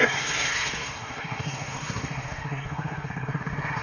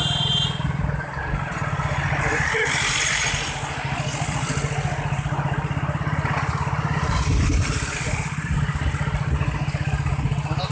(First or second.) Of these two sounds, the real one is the second